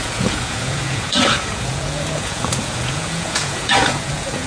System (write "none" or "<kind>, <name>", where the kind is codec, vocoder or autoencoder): vocoder, Vocos